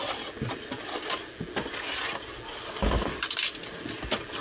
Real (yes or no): yes